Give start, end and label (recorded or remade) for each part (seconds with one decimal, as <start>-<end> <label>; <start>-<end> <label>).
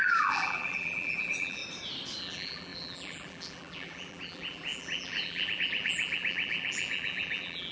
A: 0.0-1.6 remade; 1.6-2.2 recorded; 2.2-7.7 remade